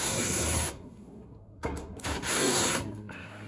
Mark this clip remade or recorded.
remade